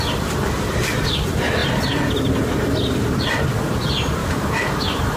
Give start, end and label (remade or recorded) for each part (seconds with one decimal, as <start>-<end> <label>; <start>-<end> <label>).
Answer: 0.0-4.2 recorded; 4.2-5.2 remade